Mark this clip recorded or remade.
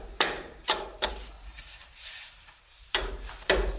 remade